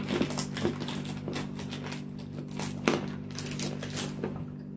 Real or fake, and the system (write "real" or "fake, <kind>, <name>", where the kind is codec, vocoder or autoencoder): real